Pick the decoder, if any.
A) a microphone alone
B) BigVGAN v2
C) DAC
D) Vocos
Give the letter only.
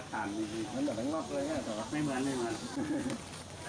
A